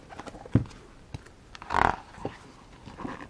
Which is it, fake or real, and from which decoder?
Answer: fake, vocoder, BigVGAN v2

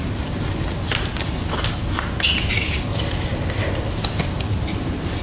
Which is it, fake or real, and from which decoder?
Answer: real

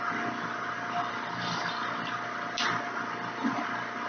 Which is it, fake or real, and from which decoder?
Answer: real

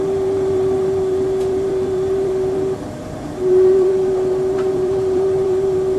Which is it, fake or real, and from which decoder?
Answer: fake, vocoder, BigVGAN v2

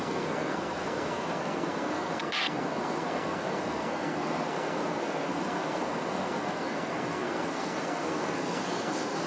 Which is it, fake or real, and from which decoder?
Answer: fake, codec, SNAC